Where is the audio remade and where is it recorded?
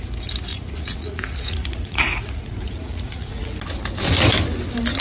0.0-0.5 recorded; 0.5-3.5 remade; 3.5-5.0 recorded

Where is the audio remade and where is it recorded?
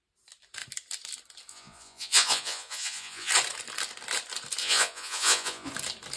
0.0-1.5 recorded; 1.5-3.3 remade; 3.3-4.6 recorded; 4.6-5.7 remade; 5.7-6.2 recorded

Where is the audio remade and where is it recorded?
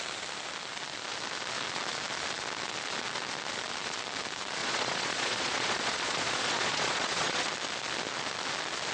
0.0-4.6 recorded; 4.6-7.5 remade; 7.5-8.9 recorded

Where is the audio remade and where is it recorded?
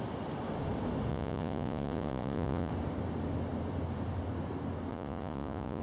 0.0-1.1 recorded; 1.1-2.7 remade; 2.7-4.9 recorded; 4.9-5.8 remade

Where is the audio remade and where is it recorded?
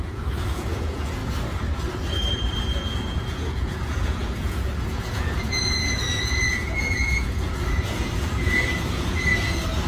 0.0-1.2 remade; 1.2-2.6 recorded; 2.6-9.9 remade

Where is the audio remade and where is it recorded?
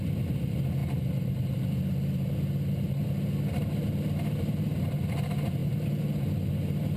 0.0-7.0 recorded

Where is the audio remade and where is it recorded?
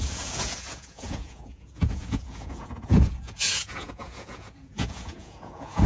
0.0-5.9 remade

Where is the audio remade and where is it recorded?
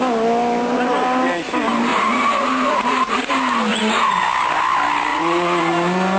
0.0-1.9 recorded; 1.9-3.3 remade; 3.3-3.7 recorded; 3.7-4.2 remade; 4.2-5.1 recorded; 5.1-5.6 remade; 5.6-6.2 recorded